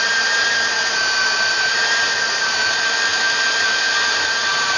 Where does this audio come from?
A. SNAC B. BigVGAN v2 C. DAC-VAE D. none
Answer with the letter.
B